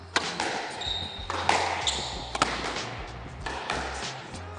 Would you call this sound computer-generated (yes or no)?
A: no